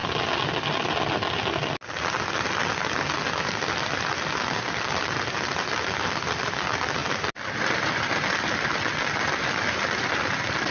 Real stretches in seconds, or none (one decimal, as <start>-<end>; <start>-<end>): 0.0-10.7